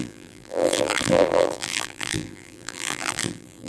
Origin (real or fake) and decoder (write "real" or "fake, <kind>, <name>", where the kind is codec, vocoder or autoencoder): fake, vocoder, BigVGAN v2